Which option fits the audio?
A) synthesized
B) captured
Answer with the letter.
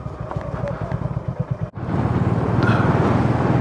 B